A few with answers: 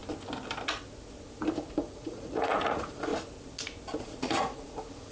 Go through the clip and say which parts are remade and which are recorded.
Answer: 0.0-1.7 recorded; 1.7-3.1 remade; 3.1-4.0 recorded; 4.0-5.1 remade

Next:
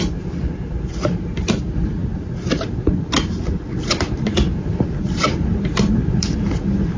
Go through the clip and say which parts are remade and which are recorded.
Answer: 0.0-7.0 recorded

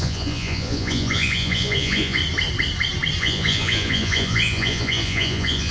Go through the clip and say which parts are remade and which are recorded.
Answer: 0.0-2.2 remade; 2.2-3.2 recorded; 3.2-5.7 remade

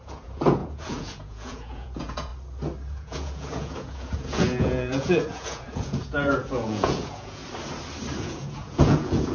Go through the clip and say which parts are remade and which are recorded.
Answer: 0.0-2.3 remade; 2.3-2.9 recorded; 2.9-7.4 remade; 7.4-8.2 recorded; 8.2-9.3 remade

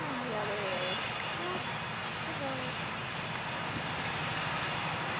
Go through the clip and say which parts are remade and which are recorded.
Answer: 0.0-5.2 recorded